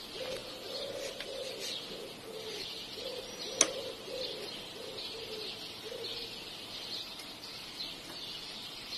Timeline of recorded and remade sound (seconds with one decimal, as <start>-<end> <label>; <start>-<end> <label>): 0.0-9.0 recorded